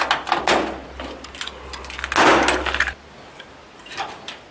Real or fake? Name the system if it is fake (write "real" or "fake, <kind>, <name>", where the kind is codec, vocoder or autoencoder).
real